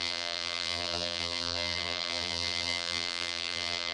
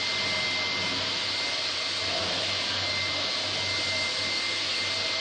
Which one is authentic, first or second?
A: second